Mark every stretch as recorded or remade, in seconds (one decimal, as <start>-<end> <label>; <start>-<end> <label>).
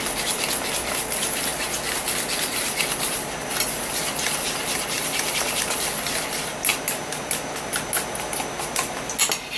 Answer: 0.0-9.6 recorded